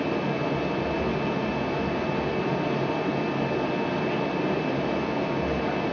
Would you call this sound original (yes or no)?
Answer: yes